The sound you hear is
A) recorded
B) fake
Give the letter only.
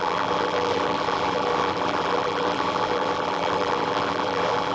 B